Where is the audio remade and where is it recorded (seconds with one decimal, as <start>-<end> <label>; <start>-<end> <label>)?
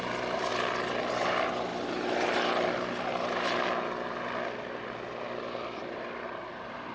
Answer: 0.0-0.5 remade; 0.5-1.1 recorded; 1.1-1.7 remade; 1.7-5.8 recorded; 5.8-6.9 remade